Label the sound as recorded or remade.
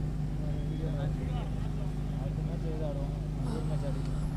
recorded